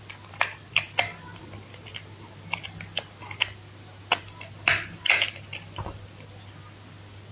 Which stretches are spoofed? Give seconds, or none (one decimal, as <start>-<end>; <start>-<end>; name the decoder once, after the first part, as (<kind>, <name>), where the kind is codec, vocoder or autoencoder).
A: none

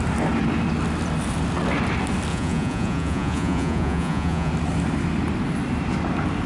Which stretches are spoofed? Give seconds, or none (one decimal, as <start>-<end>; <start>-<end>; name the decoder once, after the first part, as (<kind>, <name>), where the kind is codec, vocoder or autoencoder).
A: 2.3-4.5 (vocoder, Vocos)

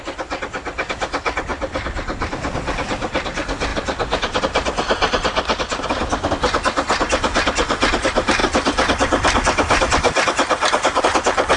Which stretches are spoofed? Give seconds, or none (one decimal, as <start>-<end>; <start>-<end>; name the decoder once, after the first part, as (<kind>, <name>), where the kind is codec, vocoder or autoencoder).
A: 1.5-2.5 (vocoder, BigVGAN v2); 3.7-4.4; 8.4-11.0